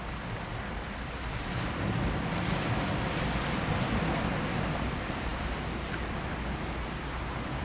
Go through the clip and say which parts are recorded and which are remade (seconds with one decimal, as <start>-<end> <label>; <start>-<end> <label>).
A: 0.0-7.6 recorded